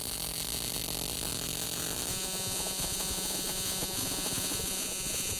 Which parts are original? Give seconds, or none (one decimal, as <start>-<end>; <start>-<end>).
0.0-2.1